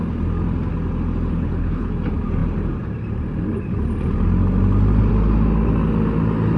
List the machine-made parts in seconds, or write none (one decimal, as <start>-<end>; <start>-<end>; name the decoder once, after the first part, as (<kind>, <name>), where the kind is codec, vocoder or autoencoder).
1.3-1.9 (codec, HILCodec)